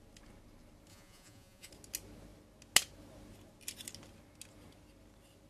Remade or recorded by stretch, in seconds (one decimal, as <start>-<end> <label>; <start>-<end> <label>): 0.0-0.9 recorded; 0.9-1.7 remade; 1.7-5.5 recorded